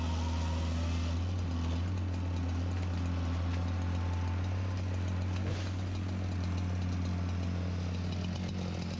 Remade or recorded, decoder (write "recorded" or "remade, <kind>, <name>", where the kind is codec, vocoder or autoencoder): recorded